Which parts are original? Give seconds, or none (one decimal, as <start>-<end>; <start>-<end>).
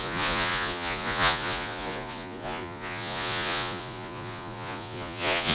none